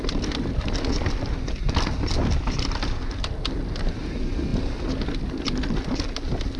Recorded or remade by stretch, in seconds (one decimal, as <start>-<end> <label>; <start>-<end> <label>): 0.0-6.6 recorded